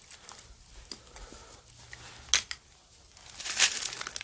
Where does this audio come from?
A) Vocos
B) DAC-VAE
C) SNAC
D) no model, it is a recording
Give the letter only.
D